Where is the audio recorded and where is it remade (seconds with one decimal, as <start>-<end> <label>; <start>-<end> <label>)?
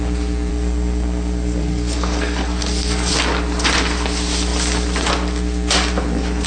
0.0-0.5 recorded; 0.5-3.1 remade; 3.1-6.5 recorded